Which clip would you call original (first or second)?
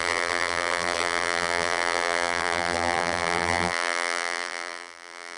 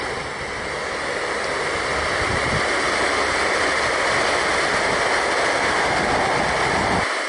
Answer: second